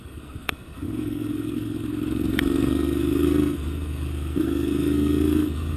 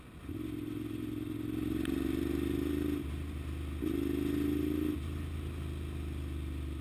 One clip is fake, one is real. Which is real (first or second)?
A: second